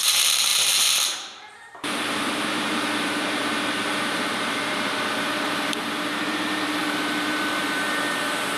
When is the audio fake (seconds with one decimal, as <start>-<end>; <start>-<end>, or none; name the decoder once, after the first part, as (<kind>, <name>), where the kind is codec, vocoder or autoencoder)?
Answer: 0.0-8.6 (vocoder, BigVGAN v2)